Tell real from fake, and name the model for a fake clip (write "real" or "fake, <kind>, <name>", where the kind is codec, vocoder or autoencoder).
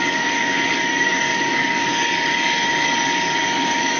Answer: fake, codec, DAC